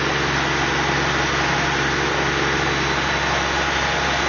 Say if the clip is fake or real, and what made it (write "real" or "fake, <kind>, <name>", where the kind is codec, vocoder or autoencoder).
real